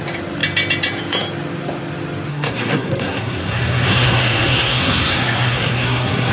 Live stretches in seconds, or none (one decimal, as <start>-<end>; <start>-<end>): 0.0-2.3